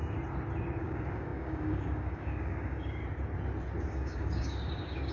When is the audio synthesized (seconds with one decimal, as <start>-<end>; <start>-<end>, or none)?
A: 0.8-3.0; 3.9-5.1